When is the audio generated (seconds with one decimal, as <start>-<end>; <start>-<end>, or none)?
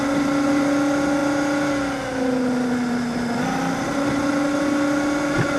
none